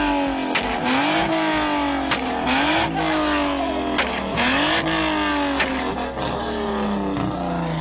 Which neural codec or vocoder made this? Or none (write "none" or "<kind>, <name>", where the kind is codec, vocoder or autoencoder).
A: none